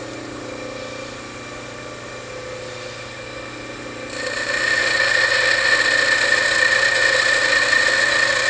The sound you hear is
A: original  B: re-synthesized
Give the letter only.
A